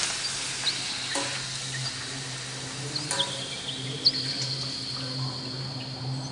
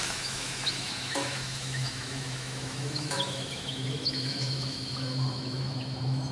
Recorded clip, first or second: first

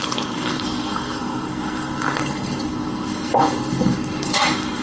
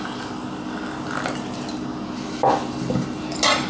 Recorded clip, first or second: second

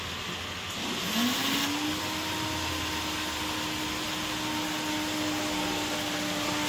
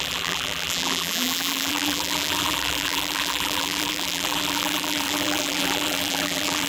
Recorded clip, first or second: first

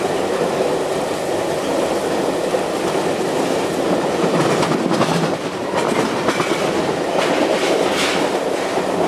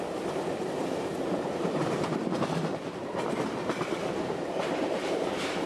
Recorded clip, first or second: first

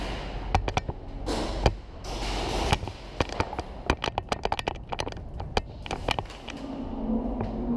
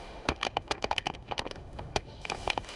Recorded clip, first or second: first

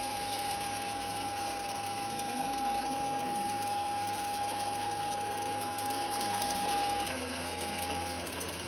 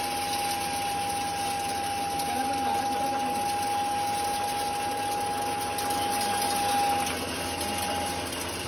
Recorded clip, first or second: second